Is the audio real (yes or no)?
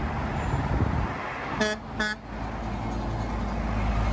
yes